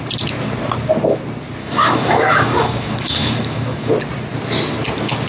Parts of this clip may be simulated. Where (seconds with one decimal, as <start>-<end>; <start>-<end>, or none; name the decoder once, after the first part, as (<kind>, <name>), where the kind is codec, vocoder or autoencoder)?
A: 1.6-3.9 (autoencoder, DAC-VAE)